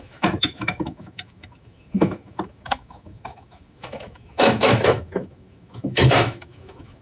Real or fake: fake